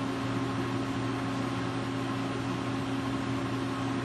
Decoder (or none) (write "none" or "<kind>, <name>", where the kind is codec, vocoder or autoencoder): none